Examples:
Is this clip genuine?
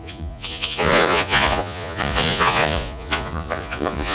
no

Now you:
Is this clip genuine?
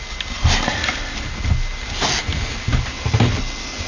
yes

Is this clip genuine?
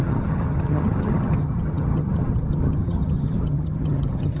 no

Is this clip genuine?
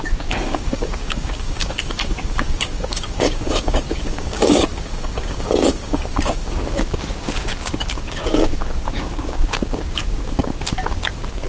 no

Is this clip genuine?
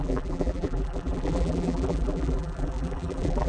no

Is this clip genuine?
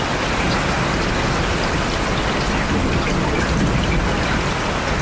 yes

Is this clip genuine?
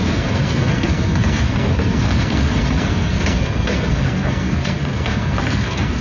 no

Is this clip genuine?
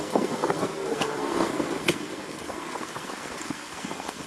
no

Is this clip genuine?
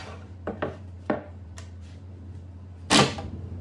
no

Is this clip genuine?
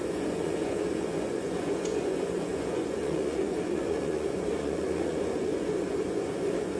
no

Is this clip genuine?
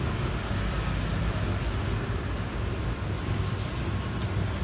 yes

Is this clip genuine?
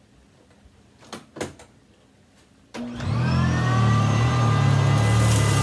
yes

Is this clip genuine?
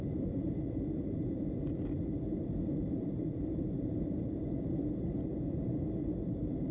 no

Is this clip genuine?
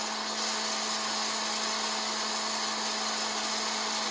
yes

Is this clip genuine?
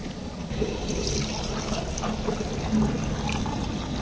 yes